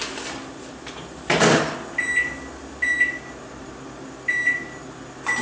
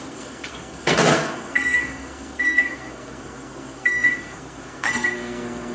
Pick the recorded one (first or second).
first